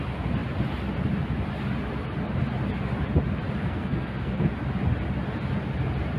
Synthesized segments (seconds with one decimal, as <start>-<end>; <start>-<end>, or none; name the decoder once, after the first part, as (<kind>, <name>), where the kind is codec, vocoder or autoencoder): 3.6-4.5 (codec, SNAC)